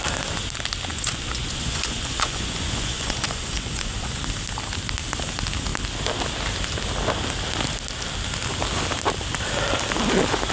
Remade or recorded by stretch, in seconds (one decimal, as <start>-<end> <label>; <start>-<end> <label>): 0.0-0.9 recorded; 0.9-4.2 remade; 4.2-10.5 recorded